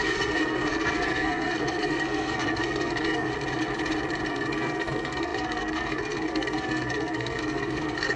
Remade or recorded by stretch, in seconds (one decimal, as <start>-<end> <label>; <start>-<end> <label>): 0.0-3.3 remade; 3.3-4.3 recorded; 4.3-8.2 remade